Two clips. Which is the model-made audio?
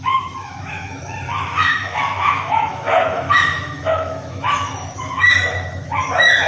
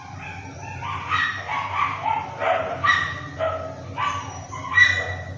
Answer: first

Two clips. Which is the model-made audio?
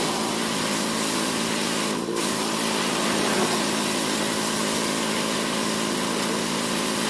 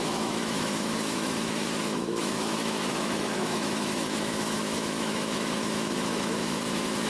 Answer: second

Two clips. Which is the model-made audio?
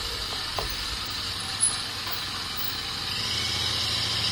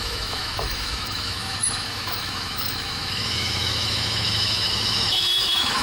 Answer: second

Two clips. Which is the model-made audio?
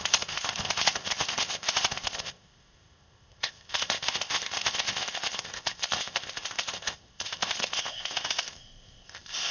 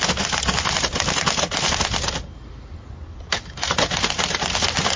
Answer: first